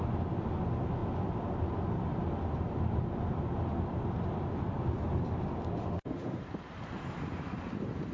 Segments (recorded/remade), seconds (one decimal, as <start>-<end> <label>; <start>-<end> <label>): 0.0-5.8 recorded; 5.8-6.4 remade; 6.4-8.1 recorded